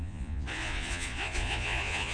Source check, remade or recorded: remade